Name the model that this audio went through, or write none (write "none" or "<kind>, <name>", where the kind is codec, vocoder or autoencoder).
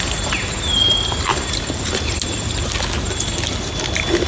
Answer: none